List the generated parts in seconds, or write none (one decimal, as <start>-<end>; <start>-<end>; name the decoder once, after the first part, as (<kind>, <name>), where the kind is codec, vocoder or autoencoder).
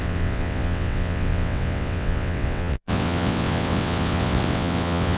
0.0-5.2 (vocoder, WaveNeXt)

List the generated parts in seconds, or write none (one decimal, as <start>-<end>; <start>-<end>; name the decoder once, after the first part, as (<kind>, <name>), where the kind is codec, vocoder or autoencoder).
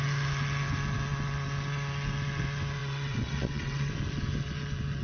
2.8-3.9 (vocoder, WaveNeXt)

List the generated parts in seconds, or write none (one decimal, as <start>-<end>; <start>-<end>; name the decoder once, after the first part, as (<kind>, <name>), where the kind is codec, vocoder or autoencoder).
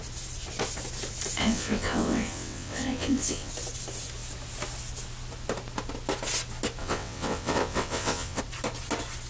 1.4-3.5 (vocoder, WaveNeXt); 6.8-8.4